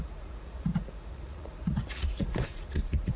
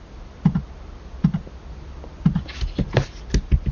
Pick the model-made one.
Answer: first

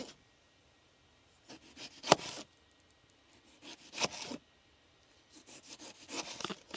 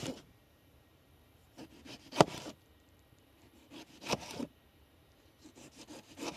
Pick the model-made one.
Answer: second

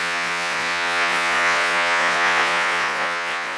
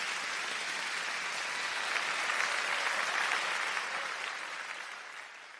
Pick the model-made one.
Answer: first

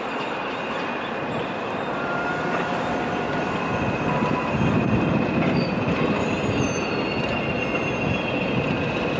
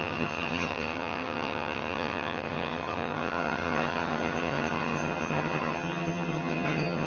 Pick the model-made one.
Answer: second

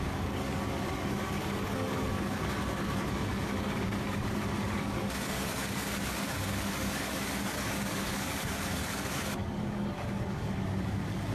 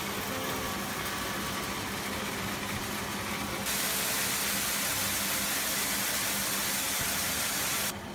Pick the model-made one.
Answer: first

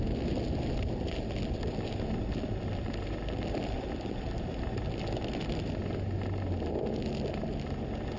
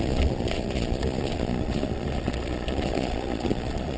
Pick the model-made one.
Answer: second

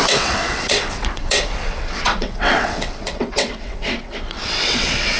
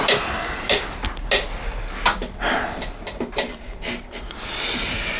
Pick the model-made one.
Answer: first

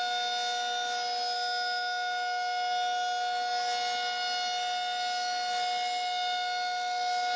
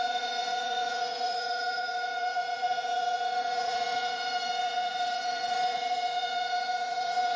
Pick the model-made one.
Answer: second